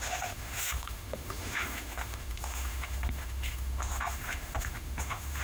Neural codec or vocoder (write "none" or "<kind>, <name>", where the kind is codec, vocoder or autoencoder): autoencoder, DAC-VAE